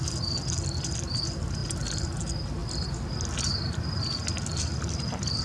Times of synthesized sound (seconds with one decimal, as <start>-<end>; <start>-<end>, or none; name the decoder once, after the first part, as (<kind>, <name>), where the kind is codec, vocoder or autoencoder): 1.6-2.2 (vocoder, BigVGAN v2); 2.6-3.1